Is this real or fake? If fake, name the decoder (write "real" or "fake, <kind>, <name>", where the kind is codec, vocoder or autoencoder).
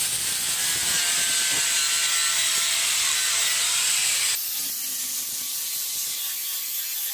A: real